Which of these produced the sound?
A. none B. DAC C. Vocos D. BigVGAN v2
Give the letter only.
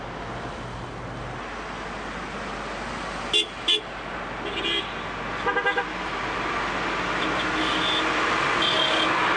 A